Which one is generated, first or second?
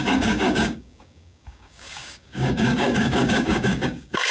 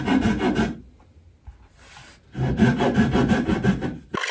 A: first